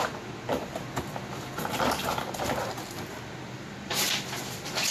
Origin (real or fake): real